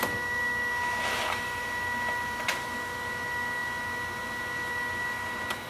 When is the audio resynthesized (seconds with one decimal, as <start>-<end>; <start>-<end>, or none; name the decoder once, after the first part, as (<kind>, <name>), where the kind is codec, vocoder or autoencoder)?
none